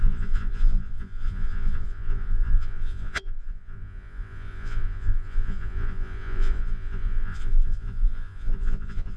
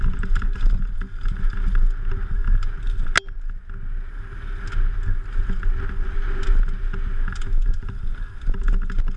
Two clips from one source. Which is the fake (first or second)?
first